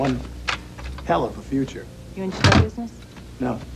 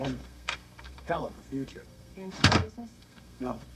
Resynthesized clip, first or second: second